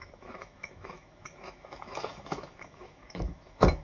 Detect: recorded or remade remade